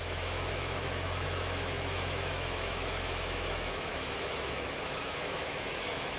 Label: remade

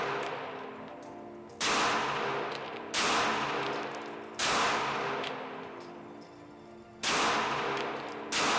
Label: recorded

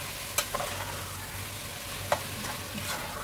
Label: recorded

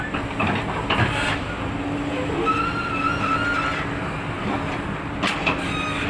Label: recorded